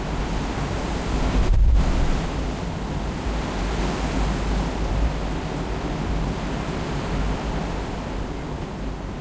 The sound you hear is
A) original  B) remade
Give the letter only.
A